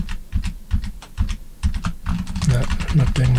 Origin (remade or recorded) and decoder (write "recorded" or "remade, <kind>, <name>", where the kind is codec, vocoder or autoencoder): recorded